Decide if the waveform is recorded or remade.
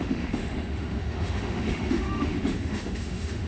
remade